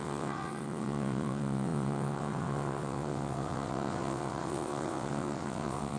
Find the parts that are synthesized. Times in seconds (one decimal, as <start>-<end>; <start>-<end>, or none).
0.0-6.0